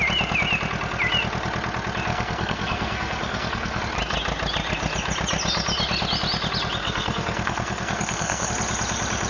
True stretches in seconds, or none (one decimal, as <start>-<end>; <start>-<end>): 0.0-2.1; 3.8-6.8; 8.5-9.3